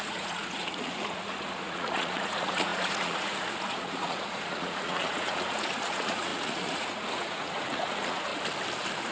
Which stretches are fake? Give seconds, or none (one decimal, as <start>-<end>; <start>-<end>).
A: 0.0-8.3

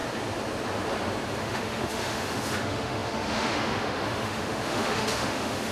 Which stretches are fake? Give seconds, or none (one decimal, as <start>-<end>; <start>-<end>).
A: 1.4-5.7

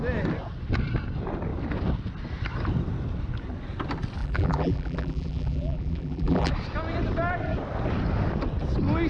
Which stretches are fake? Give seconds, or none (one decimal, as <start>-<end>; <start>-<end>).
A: 4.2-6.5

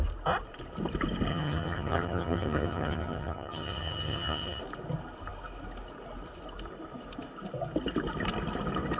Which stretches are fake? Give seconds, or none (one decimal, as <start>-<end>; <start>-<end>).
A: 1.3-4.6

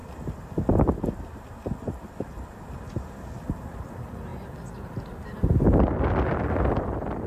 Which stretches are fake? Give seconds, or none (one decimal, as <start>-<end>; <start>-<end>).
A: none